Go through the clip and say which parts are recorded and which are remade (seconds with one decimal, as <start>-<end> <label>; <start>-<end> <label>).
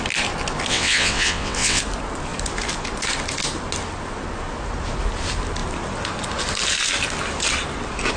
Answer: 0.0-0.7 recorded; 0.7-1.8 remade; 1.8-8.2 recorded